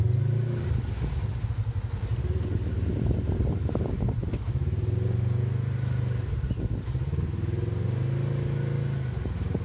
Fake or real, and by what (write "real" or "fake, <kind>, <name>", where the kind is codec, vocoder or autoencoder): real